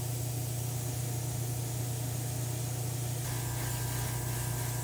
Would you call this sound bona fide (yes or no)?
yes